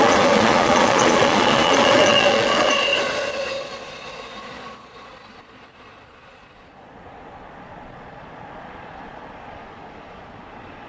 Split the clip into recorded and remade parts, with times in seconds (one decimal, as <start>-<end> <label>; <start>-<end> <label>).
0.0-2.9 remade; 2.9-3.6 recorded; 3.6-10.9 remade